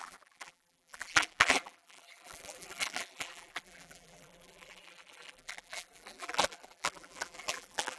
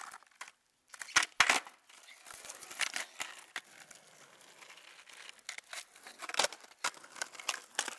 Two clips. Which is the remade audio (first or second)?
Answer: first